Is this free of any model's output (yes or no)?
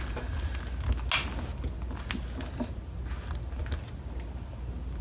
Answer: yes